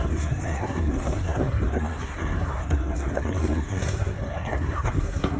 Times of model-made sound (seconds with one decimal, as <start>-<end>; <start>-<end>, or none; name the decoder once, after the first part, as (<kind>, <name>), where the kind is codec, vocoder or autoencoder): 0.0-5.4 (codec, SNAC)